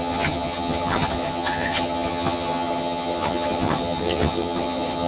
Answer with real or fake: fake